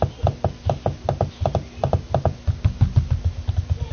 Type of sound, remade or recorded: recorded